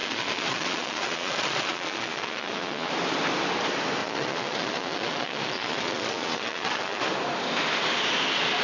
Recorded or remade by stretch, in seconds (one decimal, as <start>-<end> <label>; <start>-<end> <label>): 0.0-2.9 remade; 2.9-4.0 recorded; 4.0-7.0 remade; 7.0-8.6 recorded